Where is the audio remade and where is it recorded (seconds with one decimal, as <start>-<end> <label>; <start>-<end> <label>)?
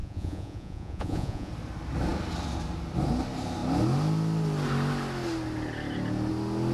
0.0-1.5 remade; 1.5-6.7 recorded